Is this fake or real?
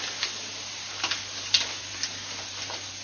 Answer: real